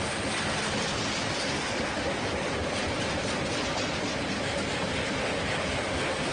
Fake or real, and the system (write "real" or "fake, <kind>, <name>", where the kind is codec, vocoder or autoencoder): real